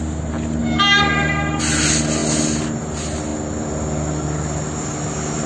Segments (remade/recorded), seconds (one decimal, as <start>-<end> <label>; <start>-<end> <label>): 0.0-5.5 recorded